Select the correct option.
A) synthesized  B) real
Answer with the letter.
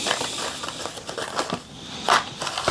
B